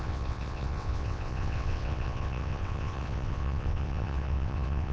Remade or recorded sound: remade